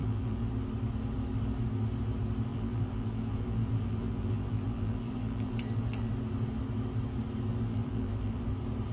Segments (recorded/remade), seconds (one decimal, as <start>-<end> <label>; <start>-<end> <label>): 0.0-0.5 remade; 0.5-2.5 recorded; 2.5-6.1 remade; 6.1-7.5 recorded; 7.5-8.5 remade; 8.5-8.9 recorded